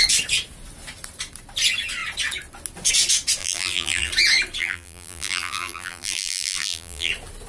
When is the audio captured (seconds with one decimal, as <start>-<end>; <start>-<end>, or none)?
0.0-3.4; 4.1-4.6; 7.1-7.5